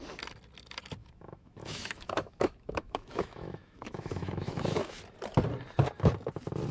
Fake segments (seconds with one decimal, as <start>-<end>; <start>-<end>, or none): 1.0-5.0